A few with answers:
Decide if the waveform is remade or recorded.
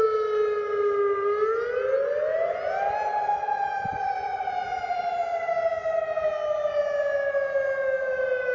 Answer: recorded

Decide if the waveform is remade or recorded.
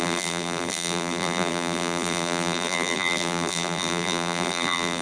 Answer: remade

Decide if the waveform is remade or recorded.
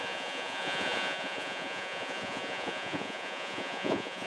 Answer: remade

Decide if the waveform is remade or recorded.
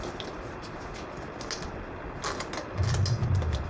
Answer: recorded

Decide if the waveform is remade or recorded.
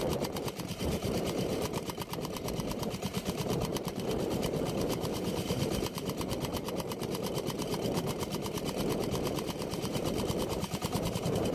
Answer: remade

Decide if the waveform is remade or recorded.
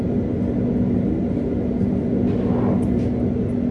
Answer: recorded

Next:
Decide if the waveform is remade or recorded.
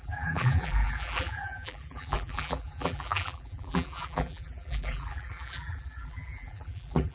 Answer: remade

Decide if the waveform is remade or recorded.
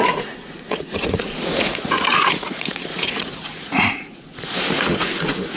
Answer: remade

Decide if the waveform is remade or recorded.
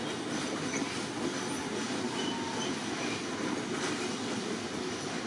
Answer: recorded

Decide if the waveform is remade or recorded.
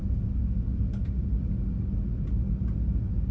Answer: recorded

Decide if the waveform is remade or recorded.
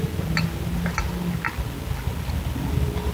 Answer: recorded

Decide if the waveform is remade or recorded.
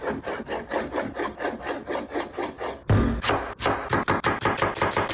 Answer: recorded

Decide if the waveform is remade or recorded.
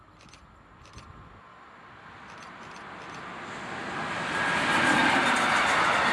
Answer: recorded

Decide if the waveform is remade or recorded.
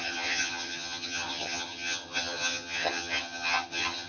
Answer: remade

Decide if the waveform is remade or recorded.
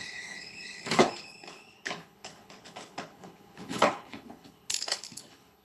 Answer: remade